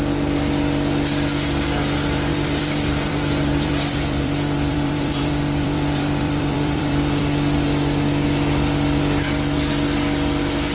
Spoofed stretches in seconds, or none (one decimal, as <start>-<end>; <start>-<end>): 2.3-7.2